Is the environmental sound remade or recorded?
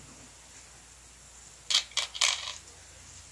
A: recorded